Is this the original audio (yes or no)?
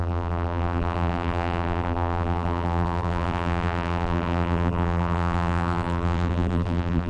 no